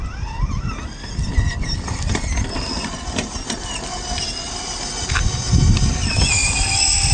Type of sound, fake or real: real